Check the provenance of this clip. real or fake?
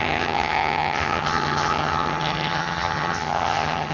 fake